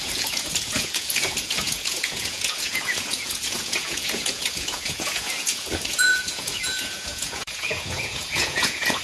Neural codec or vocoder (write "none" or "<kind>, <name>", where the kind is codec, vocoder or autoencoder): vocoder, Vocos